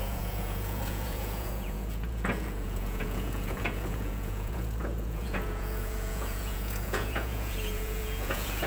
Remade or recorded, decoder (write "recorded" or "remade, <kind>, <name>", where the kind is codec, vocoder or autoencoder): remade, vocoder, Vocos